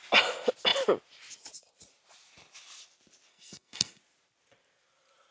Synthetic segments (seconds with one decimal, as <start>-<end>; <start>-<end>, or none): 3.3-4.0